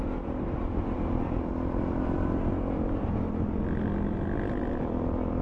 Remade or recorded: recorded